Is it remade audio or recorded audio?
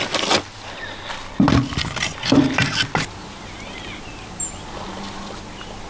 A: recorded